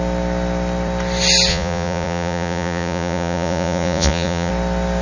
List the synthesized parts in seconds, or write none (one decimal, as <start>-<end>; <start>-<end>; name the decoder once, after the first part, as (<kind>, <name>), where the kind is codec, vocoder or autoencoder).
1.5-4.5 (vocoder, Vocos)